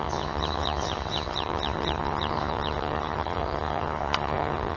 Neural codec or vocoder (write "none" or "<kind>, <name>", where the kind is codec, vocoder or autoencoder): vocoder, HiFi-GAN